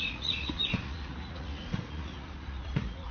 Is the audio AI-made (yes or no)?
yes